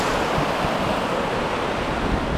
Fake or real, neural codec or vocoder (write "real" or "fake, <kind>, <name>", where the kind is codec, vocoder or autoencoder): real